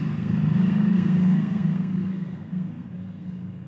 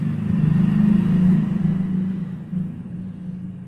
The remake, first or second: first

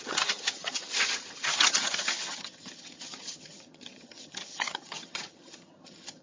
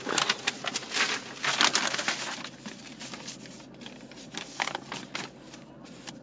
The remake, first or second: first